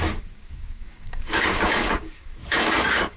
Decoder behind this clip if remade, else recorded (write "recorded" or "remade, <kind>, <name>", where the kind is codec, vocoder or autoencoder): remade, codec, DAC